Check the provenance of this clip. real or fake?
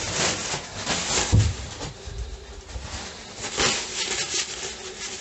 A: real